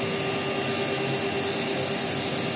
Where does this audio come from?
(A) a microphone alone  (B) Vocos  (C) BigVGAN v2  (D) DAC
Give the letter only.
A